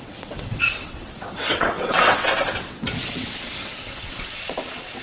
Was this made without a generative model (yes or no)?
no